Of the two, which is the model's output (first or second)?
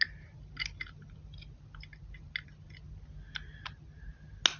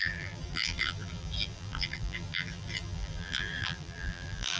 second